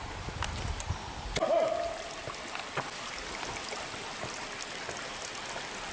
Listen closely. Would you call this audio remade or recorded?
recorded